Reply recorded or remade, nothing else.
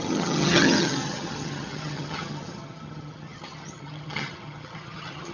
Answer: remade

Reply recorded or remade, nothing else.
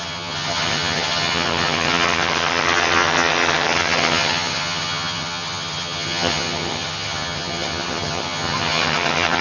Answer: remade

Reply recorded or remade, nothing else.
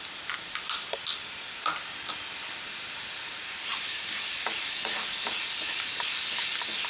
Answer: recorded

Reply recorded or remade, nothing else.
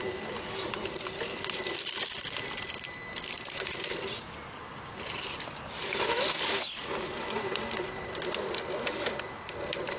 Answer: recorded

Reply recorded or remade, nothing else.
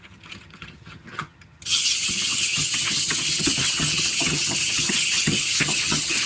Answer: remade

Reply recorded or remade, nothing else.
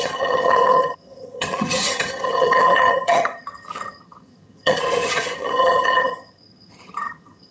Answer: remade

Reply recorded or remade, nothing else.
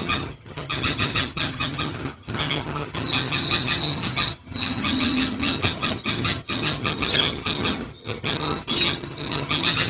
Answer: remade